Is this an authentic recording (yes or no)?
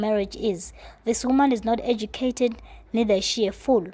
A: yes